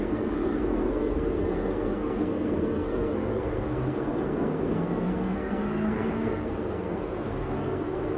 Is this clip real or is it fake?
fake